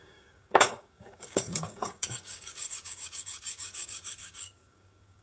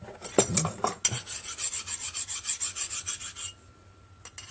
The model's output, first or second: first